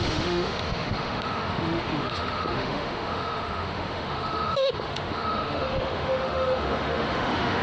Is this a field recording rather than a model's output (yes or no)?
no